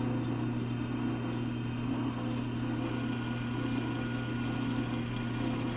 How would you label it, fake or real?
real